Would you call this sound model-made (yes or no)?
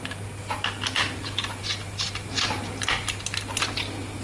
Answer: no